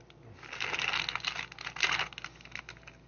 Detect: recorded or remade recorded